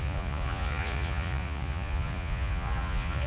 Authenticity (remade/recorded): remade